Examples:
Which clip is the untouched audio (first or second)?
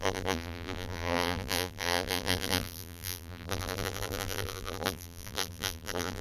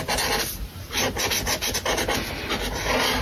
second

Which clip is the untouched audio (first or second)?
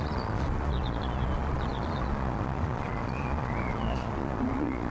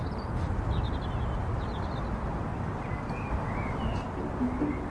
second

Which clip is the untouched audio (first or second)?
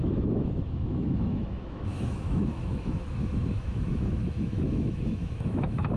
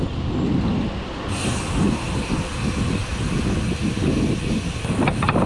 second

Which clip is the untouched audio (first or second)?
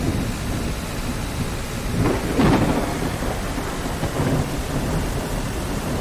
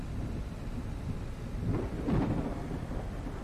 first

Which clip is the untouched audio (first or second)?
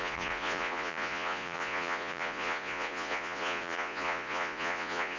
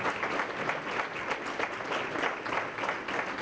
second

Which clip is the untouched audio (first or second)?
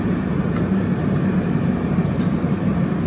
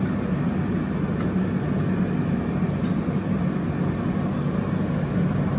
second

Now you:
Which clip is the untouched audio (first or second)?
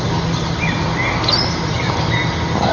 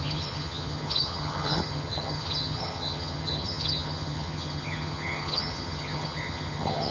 first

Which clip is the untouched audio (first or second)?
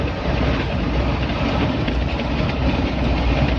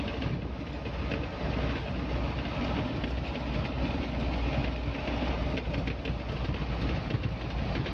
second